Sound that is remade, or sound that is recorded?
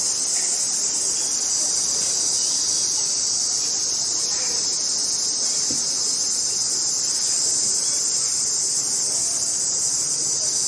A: recorded